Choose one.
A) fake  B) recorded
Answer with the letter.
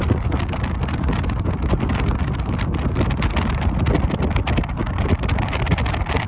B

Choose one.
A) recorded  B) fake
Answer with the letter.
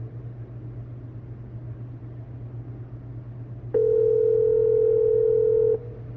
A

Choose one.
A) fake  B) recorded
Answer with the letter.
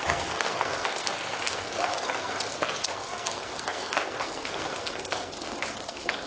A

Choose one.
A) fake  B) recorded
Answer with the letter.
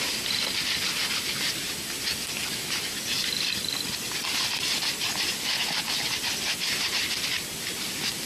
B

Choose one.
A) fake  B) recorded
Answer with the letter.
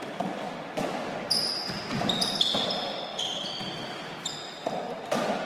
B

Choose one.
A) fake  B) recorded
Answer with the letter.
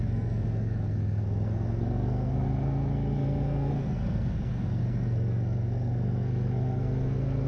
A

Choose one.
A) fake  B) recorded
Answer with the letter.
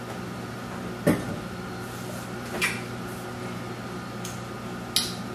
B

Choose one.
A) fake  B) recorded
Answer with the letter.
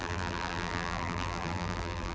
A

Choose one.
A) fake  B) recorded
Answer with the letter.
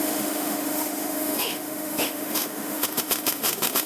A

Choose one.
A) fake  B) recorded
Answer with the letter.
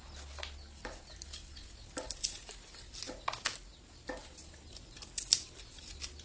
B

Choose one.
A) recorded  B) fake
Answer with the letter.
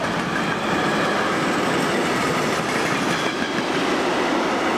A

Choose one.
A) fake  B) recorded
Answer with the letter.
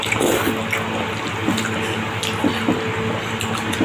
B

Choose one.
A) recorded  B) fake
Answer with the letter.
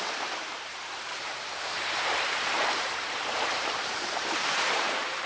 B